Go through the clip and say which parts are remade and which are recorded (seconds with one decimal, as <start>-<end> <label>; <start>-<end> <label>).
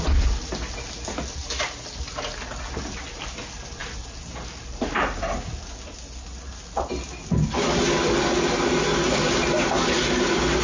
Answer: 0.0-10.6 recorded